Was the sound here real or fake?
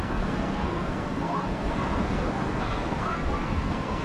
fake